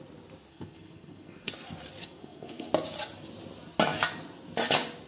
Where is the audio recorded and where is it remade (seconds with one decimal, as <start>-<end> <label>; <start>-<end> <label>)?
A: 0.0-0.5 recorded; 0.5-1.5 remade; 1.5-2.0 recorded; 2.0-2.7 remade; 2.7-5.1 recorded

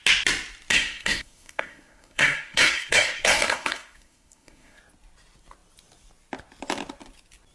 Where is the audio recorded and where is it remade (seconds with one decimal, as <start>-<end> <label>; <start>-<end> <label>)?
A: 0.0-0.7 recorded; 0.7-4.8 remade; 4.8-7.5 recorded